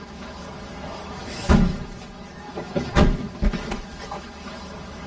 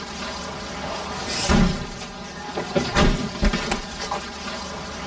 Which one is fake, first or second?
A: first